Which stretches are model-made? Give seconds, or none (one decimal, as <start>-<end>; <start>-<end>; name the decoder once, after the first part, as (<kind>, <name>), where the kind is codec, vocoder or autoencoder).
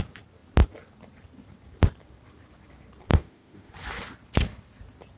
3.1-3.7 (autoencoder, DAC-VAE)